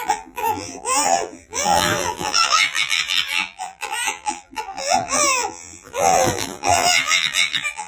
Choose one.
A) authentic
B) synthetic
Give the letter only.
B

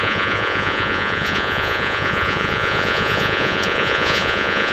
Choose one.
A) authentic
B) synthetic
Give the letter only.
B